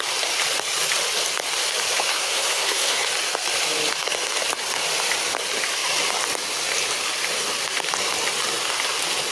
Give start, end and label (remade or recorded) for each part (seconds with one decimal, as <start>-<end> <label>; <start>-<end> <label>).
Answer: 0.0-2.1 recorded; 2.1-3.1 remade; 3.1-9.3 recorded